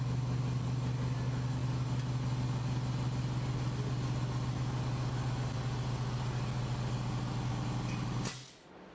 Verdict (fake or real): real